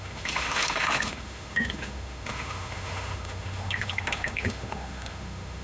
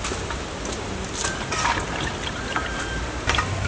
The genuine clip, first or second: second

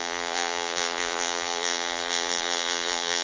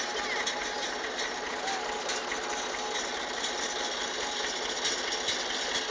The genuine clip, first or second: second